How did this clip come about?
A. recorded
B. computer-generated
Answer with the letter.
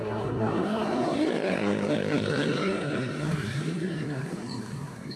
B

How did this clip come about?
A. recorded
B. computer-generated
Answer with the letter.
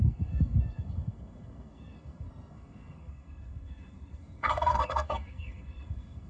B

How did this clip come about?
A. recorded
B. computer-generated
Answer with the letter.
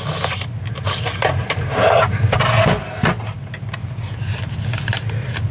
A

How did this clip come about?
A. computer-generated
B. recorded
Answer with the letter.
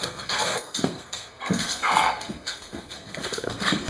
A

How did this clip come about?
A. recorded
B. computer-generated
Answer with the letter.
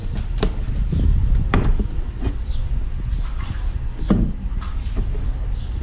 A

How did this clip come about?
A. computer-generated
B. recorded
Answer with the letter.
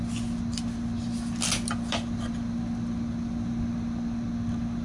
B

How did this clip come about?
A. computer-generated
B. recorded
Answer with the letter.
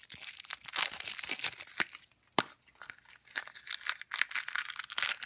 B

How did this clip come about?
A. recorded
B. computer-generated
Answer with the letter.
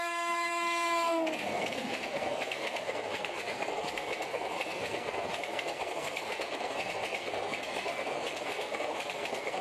B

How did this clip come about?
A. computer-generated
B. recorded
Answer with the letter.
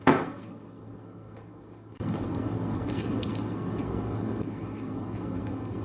A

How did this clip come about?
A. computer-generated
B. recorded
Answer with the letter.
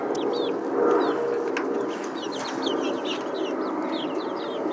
B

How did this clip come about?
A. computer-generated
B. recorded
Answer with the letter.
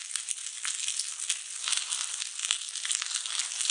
B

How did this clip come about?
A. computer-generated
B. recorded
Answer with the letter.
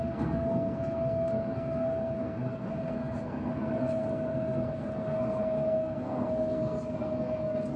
A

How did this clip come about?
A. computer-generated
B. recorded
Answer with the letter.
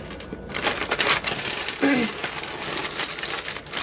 B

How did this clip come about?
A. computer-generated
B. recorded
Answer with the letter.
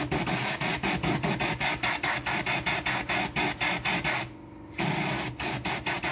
B